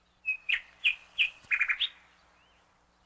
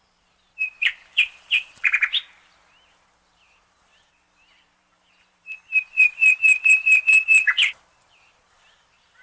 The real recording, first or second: first